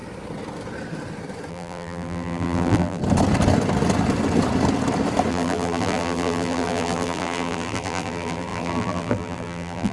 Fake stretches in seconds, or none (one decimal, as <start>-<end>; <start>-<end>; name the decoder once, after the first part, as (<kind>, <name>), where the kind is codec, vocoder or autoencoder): 1.5-3.0 (vocoder, BigVGAN v2); 5.3-9.9